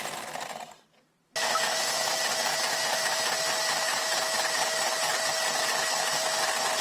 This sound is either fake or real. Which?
real